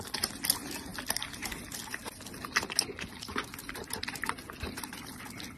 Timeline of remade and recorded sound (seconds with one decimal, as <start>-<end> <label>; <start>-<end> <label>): 0.0-5.6 recorded